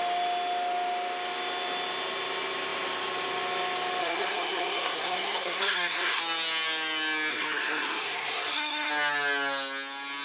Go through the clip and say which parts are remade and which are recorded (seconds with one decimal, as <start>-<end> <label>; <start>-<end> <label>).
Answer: 0.0-4.0 recorded; 4.0-6.2 remade; 6.2-7.3 recorded; 7.3-8.9 remade; 8.9-10.2 recorded